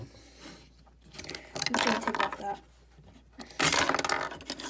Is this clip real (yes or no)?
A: yes